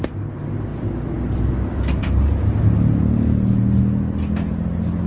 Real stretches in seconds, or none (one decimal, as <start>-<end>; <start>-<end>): 0.0-5.1